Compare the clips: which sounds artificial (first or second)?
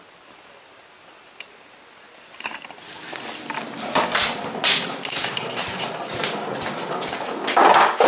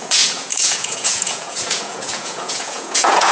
second